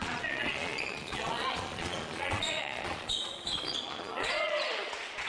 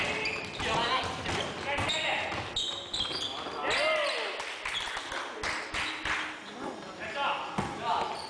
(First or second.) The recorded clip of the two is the second